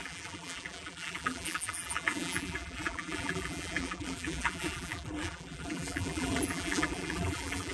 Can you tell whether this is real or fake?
fake